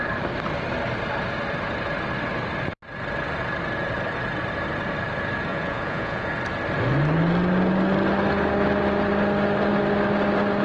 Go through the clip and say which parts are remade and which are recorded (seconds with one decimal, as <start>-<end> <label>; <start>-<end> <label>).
0.0-5.5 recorded; 5.5-6.3 remade; 6.3-10.6 recorded

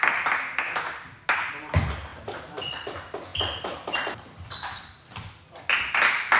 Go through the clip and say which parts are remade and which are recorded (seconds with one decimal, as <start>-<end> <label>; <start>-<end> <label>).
0.0-6.4 recorded